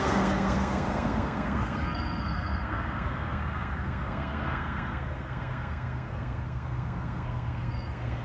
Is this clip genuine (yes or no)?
no